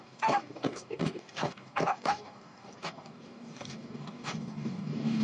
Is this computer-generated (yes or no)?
yes